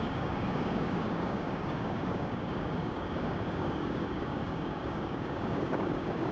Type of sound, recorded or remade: remade